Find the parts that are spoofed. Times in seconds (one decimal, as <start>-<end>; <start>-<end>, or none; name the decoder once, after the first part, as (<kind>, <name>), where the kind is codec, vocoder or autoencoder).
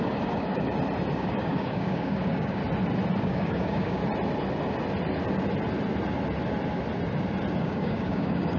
0.0-0.7 (codec, DAC); 1.2-2.6; 3.2-4.0; 7.6-8.6